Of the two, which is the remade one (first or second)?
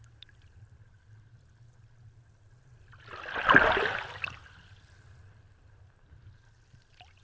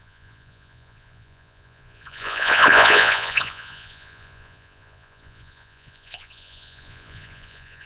second